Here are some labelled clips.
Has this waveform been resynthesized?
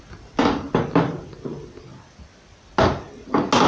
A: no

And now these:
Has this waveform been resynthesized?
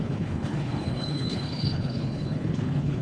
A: yes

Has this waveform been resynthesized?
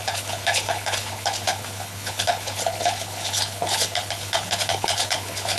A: yes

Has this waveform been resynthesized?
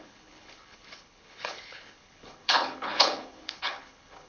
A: yes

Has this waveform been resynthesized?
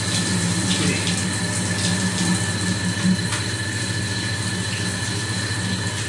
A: no